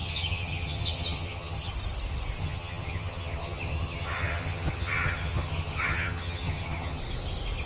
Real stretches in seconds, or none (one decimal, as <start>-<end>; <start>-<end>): 1.7-2.4; 7.0-7.7